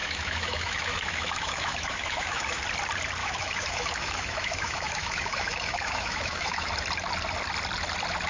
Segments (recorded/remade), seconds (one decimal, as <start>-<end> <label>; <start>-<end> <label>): 0.0-2.6 remade; 2.6-3.2 recorded; 3.2-6.7 remade; 6.7-8.3 recorded